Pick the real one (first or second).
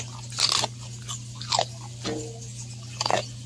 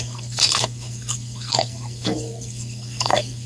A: first